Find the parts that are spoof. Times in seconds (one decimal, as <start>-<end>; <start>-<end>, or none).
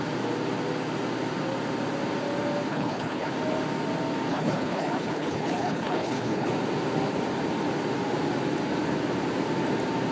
2.7-3.3; 4.3-6.5